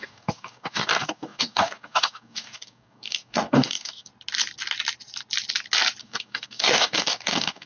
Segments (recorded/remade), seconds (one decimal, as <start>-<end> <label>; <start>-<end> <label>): 0.0-4.1 remade; 4.1-6.0 recorded; 6.0-7.7 remade